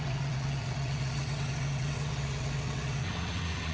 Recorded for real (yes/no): no